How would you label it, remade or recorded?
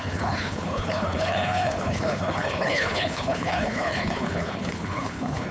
remade